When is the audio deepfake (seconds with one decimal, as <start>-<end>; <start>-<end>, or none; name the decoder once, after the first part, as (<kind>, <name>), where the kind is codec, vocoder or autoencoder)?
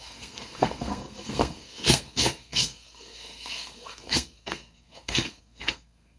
0.0-6.2 (codec, SNAC)